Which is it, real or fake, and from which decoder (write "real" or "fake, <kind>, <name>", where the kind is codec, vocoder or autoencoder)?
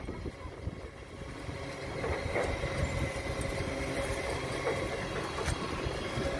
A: real